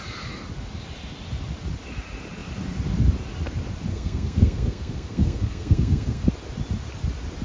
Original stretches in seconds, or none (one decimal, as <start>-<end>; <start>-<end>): 0.0-3.9; 6.3-7.4